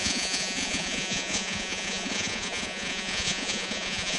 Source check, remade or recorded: remade